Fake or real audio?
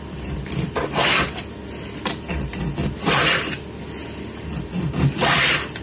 real